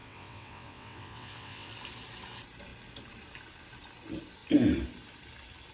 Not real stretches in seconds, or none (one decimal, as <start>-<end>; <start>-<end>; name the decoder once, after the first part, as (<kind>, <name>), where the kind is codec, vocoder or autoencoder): 0.0-1.7 (vocoder, WaveNeXt)